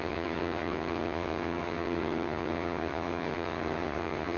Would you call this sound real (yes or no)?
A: no